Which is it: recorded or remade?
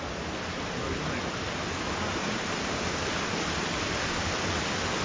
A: recorded